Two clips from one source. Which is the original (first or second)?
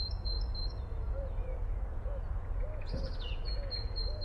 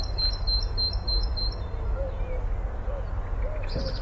second